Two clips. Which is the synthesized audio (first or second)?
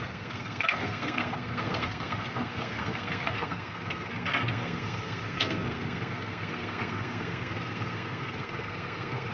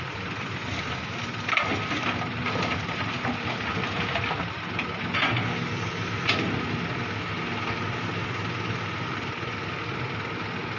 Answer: first